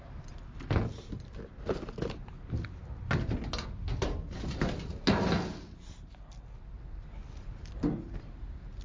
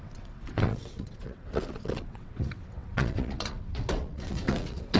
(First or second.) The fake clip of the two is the second